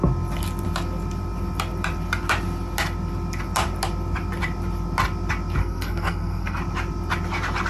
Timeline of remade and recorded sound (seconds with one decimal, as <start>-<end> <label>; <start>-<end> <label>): 0.0-5.6 recorded; 5.6-6.6 remade; 6.6-7.7 recorded